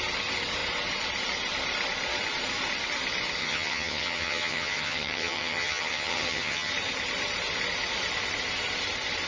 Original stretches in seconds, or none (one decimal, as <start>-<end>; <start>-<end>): 0.0-3.4; 6.7-9.3